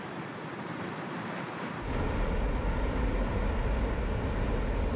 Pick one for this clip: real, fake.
real